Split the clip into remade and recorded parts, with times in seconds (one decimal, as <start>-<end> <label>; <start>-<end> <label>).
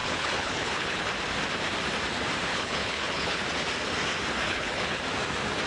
0.0-1.1 remade; 1.1-2.5 recorded; 2.5-3.4 remade; 3.4-4.4 recorded; 4.4-5.0 remade; 5.0-5.7 recorded